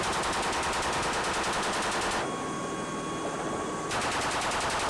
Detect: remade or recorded recorded